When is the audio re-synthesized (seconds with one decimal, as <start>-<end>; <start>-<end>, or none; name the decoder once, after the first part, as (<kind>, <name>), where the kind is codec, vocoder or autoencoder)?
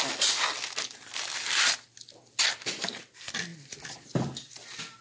none